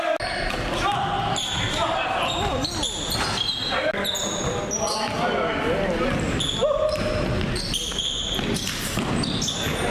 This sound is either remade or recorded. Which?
recorded